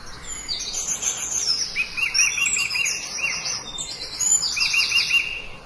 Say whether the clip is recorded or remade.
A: recorded